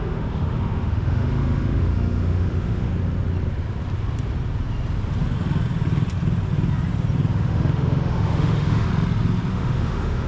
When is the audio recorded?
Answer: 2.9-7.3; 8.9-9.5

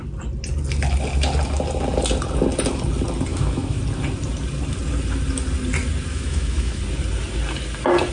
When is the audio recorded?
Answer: 0.0-3.3; 3.8-6.1; 6.8-8.1